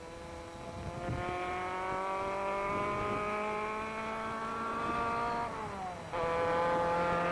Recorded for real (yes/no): yes